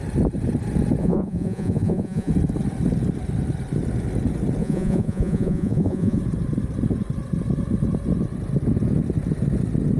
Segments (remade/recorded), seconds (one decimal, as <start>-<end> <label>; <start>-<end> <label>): 0.0-1.0 recorded; 1.0-2.3 remade; 2.3-4.6 recorded; 4.6-6.2 remade; 6.2-10.0 recorded